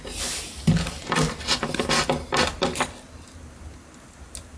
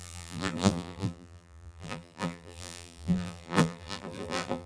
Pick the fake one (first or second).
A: second